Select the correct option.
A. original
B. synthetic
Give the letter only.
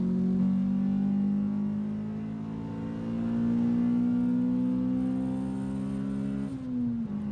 A